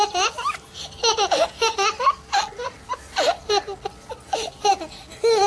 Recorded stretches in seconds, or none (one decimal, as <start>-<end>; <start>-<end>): 0.0-5.5